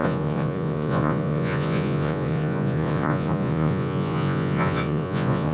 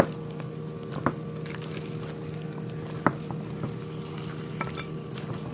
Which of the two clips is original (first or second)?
second